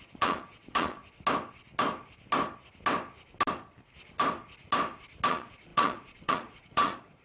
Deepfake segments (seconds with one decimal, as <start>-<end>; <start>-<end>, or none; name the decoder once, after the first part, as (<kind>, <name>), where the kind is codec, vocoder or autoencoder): 0.0-1.0 (vocoder, Vocos); 5.3-7.2